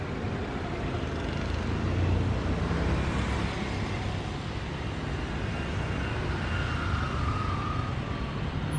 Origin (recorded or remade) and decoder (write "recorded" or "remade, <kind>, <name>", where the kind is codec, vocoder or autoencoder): recorded